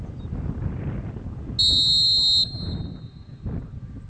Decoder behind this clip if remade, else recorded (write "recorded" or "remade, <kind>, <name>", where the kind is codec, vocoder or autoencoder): recorded